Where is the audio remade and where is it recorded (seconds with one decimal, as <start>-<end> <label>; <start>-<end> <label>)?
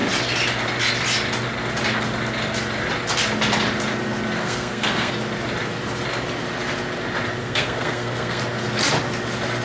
0.0-4.4 recorded; 4.4-5.1 remade; 5.1-7.4 recorded; 7.4-8.4 remade; 8.4-9.6 recorded